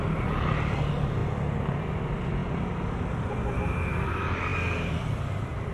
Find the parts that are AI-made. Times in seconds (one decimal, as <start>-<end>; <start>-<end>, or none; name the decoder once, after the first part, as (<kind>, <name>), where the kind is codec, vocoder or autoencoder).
none